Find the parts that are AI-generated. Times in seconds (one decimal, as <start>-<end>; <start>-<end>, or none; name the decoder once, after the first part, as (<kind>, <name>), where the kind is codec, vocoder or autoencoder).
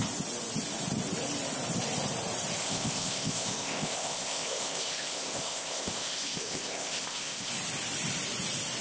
2.6-7.5 (codec, ZipCodec)